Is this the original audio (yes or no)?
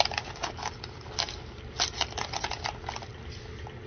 yes